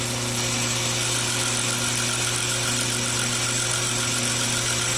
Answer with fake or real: real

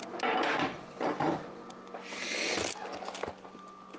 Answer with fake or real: real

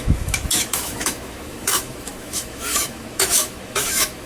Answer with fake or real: fake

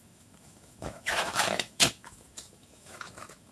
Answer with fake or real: fake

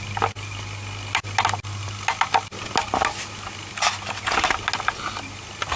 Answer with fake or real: real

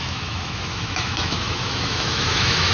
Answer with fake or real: fake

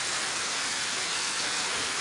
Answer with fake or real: fake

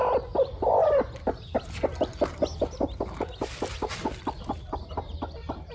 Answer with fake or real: real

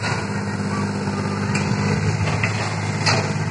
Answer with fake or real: real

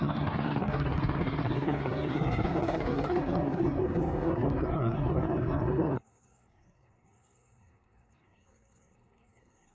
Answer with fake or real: fake